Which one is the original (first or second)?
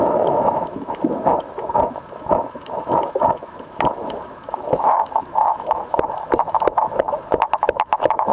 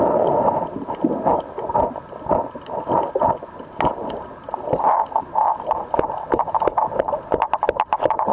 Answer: second